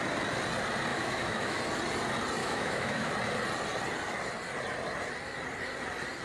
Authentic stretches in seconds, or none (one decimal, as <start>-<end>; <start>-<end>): 0.0-0.9; 1.6-2.4; 3.1-6.2